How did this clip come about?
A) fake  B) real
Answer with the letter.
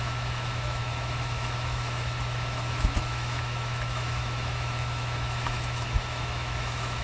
A